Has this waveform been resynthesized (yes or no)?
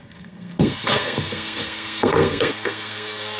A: yes